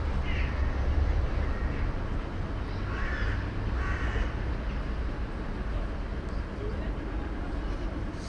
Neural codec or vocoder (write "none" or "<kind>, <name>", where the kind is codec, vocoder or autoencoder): none